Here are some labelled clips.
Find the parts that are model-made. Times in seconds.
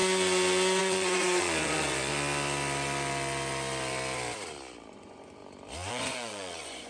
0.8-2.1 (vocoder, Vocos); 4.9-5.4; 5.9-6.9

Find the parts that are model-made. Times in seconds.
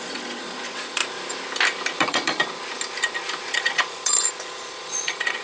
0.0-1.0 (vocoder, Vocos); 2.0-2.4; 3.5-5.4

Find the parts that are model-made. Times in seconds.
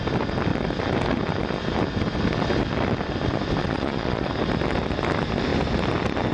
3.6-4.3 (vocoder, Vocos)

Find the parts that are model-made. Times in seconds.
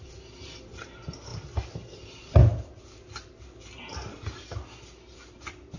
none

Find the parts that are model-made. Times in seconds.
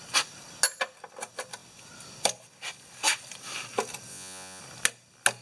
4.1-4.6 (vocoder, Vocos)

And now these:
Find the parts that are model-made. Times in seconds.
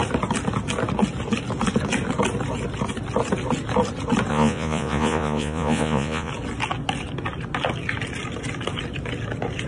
4.3-6.3 (vocoder, Vocos)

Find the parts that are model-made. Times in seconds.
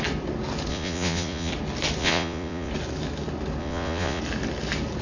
0.7-1.5 (vocoder, Vocos); 2.0-2.7; 3.6-4.2